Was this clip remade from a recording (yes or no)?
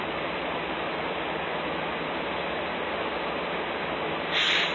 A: no